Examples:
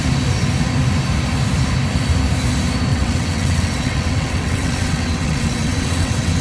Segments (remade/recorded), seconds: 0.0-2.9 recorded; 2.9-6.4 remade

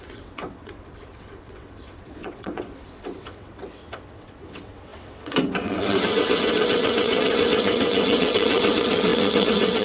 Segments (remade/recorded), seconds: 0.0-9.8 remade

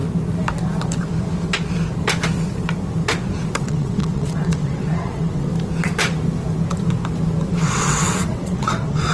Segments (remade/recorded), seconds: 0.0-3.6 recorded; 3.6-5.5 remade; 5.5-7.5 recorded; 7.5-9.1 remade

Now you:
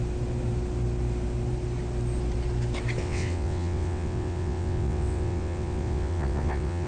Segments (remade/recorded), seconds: 0.0-3.0 recorded; 3.0-6.9 remade

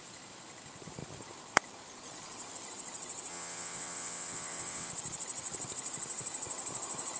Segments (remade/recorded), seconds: 0.0-3.3 recorded; 3.3-4.9 remade; 4.9-7.2 recorded